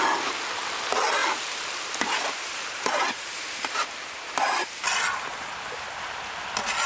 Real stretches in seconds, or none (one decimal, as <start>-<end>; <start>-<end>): 0.0-1.2; 4.6-5.3; 6.2-6.9